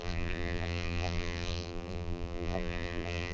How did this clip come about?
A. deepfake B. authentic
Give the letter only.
A